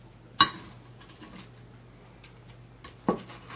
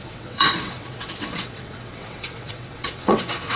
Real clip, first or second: first